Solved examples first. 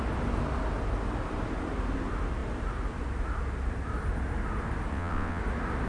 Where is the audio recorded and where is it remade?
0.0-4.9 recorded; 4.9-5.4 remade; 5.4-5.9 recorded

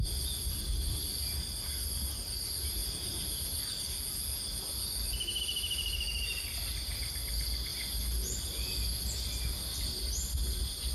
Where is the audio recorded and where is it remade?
0.0-2.8 remade; 2.8-5.4 recorded; 5.4-7.7 remade; 7.7-10.0 recorded; 10.0-10.9 remade

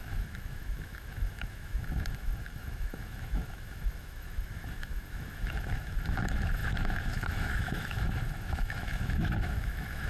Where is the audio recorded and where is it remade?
0.0-10.1 remade

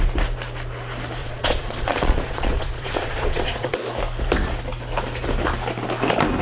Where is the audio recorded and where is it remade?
0.0-1.2 recorded; 1.2-3.8 remade; 3.8-6.4 recorded

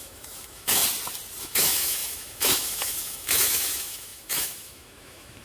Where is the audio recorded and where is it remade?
0.0-0.8 remade; 0.8-1.4 recorded; 1.4-5.4 remade